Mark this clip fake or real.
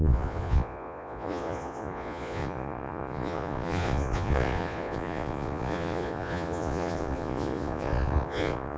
fake